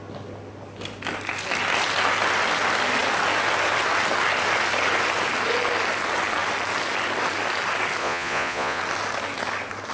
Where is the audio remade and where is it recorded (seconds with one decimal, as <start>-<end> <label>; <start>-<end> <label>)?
0.0-8.0 recorded; 8.0-8.8 remade; 8.8-9.9 recorded

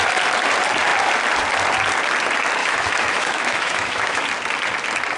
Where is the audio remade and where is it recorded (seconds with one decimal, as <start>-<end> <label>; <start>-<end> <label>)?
0.0-2.6 recorded; 2.6-4.2 remade; 4.2-5.2 recorded

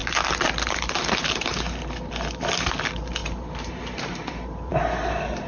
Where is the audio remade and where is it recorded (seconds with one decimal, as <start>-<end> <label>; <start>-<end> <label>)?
0.0-3.2 recorded; 3.2-4.8 remade; 4.8-5.5 recorded

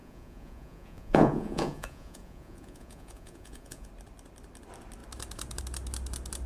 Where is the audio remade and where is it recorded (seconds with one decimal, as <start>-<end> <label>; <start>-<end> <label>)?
0.0-3.9 remade; 3.9-6.5 recorded

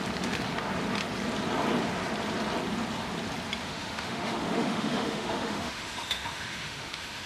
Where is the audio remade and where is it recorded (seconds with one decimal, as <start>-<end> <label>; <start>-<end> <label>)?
0.0-3.6 recorded; 3.6-7.3 remade